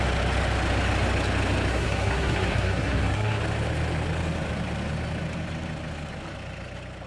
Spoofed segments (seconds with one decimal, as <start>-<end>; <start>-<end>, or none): 1.7-3.4